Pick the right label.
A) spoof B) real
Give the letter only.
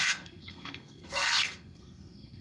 A